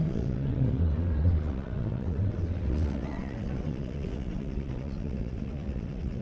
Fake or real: fake